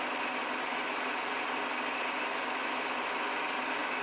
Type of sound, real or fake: real